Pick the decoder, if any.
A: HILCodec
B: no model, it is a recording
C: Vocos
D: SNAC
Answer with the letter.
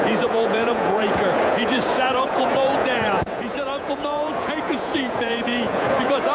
C